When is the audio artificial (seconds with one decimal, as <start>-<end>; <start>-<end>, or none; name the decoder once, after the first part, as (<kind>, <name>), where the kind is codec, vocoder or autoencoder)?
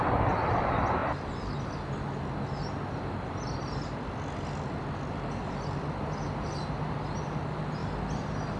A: none